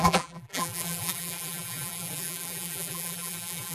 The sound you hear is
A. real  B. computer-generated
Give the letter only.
B